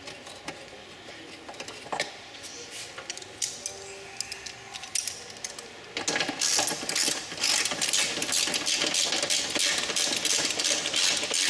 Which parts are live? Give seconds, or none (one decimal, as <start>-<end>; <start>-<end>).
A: 0.0-11.5